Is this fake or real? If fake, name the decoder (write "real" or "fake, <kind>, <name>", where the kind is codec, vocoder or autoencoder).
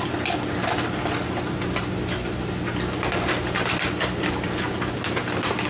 real